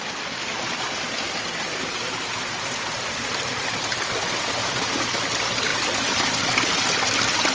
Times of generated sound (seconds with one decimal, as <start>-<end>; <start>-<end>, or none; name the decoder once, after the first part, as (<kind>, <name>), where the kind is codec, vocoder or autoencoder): none